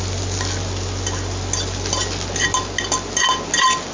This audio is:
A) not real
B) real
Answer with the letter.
B